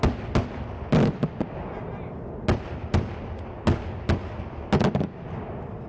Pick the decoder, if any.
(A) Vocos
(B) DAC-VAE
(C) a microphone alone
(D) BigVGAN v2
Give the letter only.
C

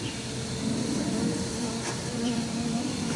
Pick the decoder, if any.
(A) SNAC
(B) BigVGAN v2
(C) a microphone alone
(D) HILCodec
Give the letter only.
B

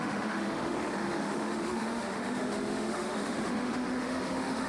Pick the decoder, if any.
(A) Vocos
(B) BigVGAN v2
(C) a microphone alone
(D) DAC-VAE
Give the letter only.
D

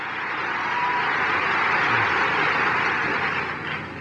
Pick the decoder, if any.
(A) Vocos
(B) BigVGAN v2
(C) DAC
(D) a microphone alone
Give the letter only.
D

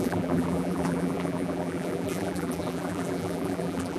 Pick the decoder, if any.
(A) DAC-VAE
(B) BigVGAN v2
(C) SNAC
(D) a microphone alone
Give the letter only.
B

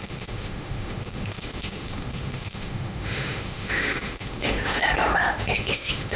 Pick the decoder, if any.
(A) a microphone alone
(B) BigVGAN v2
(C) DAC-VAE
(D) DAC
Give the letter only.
C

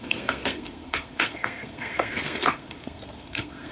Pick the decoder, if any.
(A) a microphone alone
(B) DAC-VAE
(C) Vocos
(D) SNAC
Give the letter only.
D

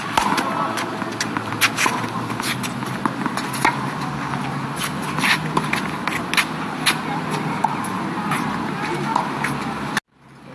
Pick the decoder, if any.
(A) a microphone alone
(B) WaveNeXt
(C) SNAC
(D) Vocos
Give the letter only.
A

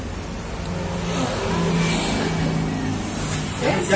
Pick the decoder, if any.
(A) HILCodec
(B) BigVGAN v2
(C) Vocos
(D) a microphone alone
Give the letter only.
D